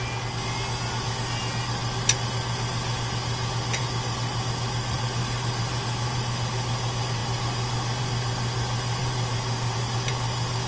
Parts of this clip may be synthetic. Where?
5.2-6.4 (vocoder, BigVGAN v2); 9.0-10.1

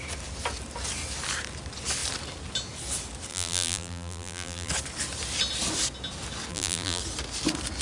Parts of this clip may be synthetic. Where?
3.3-4.7 (vocoder, BigVGAN v2); 6.5-7.0

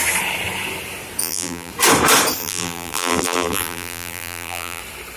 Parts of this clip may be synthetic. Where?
1.2-1.7 (vocoder, BigVGAN v2); 2.4-4.8

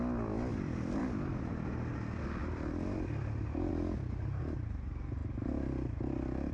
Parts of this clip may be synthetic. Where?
0.5-1.4 (vocoder, BigVGAN v2); 2.4-3.7

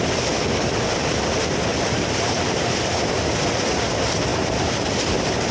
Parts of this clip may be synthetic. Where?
1.7-3.1 (vocoder, BigVGAN v2); 4.3-5.5

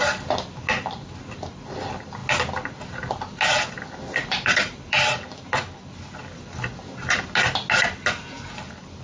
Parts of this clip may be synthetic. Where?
4.2-6.2 (vocoder, BigVGAN v2)